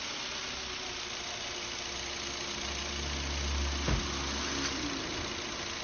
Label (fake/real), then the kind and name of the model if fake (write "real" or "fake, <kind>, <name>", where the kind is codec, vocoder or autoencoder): real